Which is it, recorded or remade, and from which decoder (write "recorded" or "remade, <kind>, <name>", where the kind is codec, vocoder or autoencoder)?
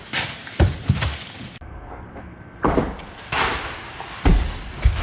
recorded